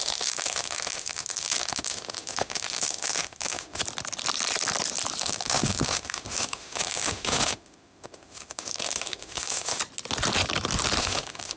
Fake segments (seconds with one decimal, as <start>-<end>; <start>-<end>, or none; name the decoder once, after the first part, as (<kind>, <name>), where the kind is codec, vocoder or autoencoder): 0.0-3.8 (autoencoder, DAC-VAE); 5.2-9.8; 11.0-11.6